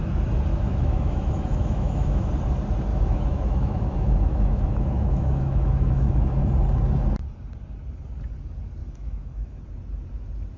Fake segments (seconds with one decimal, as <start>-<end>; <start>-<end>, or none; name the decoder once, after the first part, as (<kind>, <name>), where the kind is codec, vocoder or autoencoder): 0.5-2.3 (autoencoder, DAC-VAE); 2.9-6.4; 8.8-9.6